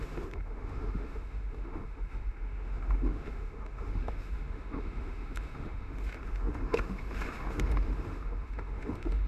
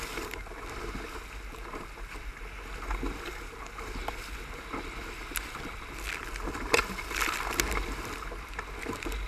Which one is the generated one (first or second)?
first